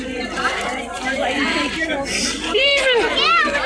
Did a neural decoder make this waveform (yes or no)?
yes